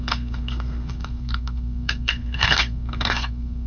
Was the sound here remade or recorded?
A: remade